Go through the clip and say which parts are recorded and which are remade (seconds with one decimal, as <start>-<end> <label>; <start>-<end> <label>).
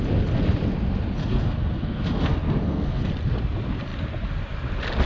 0.0-1.2 recorded; 1.2-3.1 remade; 3.1-5.1 recorded